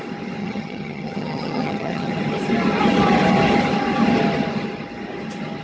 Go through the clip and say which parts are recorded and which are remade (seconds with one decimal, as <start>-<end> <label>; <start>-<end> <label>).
0.0-0.4 recorded; 0.4-2.1 remade; 2.1-5.6 recorded

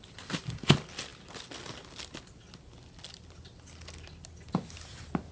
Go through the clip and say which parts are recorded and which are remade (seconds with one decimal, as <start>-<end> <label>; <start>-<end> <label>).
0.0-5.3 recorded

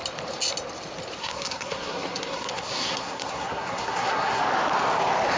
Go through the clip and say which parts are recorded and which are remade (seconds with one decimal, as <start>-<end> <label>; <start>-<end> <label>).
0.0-1.2 recorded; 1.2-4.4 remade; 4.4-5.4 recorded

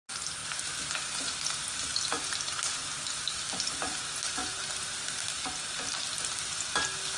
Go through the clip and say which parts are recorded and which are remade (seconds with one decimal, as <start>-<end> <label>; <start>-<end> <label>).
0.0-7.2 recorded